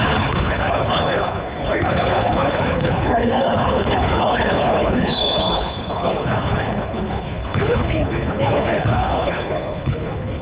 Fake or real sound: fake